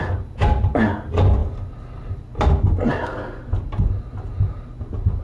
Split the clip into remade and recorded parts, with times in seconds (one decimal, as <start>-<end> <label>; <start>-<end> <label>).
0.0-5.2 recorded